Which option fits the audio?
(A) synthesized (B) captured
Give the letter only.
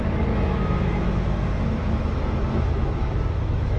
A